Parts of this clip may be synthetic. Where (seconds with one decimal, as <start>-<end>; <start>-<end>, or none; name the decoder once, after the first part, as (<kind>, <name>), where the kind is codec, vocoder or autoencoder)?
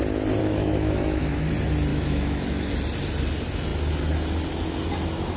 0.4-1.5 (autoencoder, DAC-VAE); 1.9-2.7